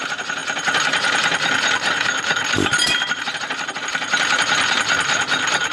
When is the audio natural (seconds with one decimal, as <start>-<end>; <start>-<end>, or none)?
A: 0.0-5.7